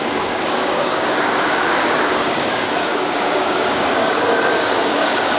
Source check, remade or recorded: remade